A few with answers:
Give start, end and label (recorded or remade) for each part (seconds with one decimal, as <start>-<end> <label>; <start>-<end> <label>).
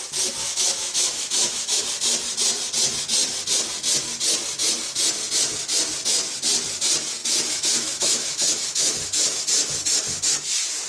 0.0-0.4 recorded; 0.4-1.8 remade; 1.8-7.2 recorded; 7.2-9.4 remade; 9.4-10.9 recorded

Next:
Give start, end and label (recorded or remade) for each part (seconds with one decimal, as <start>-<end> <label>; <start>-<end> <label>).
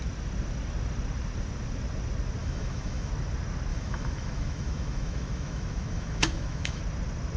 0.0-2.4 recorded; 2.4-3.1 remade; 3.1-3.7 recorded; 3.7-6.8 remade; 6.8-7.4 recorded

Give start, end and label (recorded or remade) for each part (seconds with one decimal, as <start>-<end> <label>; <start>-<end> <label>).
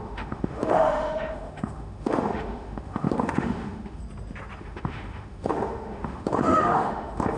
0.0-4.0 remade; 4.0-4.6 recorded; 4.6-7.4 remade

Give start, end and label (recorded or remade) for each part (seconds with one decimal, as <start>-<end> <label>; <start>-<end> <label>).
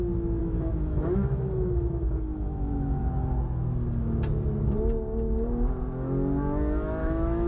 0.0-0.4 recorded; 0.4-3.0 remade; 3.0-7.0 recorded; 7.0-7.5 remade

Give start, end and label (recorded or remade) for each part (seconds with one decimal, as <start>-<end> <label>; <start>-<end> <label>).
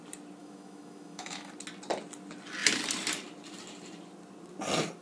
0.0-0.4 recorded; 0.4-1.5 remade; 1.5-5.0 recorded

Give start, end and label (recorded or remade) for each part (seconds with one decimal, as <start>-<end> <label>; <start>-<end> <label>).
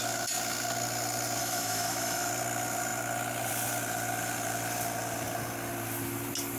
0.0-1.4 recorded; 1.4-2.3 remade; 2.3-6.6 recorded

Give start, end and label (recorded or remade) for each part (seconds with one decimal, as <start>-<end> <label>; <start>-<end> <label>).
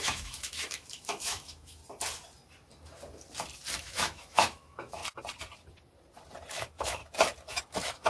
0.0-1.8 remade; 1.8-3.8 recorded; 3.8-5.0 remade; 5.0-6.5 recorded; 6.5-7.0 remade; 7.0-7.5 recorded; 7.5-8.1 remade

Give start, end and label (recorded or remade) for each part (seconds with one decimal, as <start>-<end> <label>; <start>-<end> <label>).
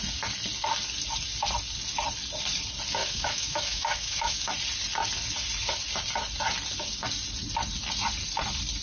0.0-3.0 recorded; 3.0-4.5 remade; 4.5-8.8 recorded